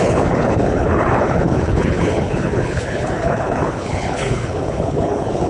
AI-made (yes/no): yes